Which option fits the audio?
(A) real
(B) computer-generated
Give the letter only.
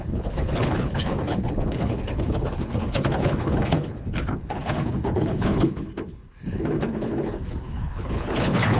B